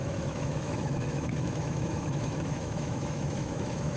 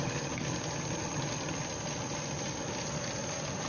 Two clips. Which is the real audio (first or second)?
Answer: second